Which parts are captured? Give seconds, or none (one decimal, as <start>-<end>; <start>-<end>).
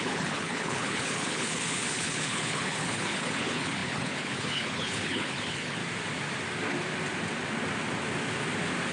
5.8-8.9